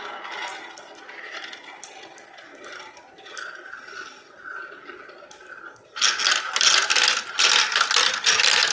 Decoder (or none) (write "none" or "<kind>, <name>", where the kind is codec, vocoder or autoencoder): none